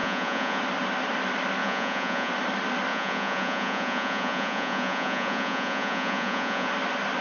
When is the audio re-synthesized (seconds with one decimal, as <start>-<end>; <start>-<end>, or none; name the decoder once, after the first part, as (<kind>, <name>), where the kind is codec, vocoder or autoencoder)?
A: 0.0-0.6 (vocoder, Vocos); 1.6-2.3; 2.9-6.7